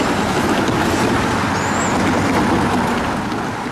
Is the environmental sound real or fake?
real